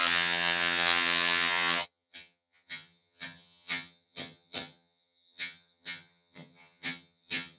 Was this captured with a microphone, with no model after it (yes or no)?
no